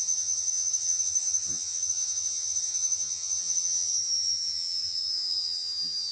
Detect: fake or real fake